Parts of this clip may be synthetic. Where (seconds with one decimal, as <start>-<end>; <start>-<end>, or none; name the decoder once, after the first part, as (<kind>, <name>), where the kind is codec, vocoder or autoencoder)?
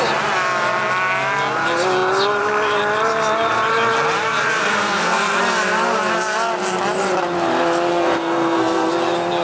4.6-5.4 (codec, SNAC); 7.9-8.9